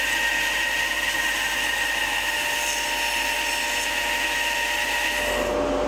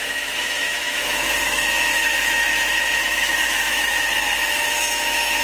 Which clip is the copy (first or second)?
second